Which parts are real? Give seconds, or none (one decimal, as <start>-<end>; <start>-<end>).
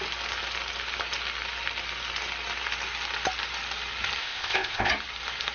0.0-4.2; 4.9-5.5